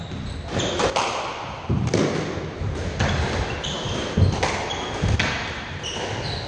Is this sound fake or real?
real